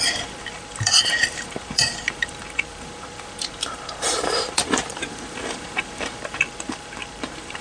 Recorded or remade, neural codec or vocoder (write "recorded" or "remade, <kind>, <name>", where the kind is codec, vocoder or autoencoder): remade, vocoder, BigVGAN v2